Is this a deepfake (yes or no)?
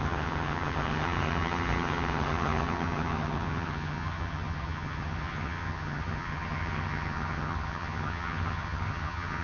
yes